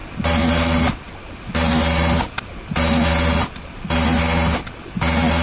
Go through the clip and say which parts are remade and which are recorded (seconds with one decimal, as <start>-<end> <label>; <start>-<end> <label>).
0.0-5.4 recorded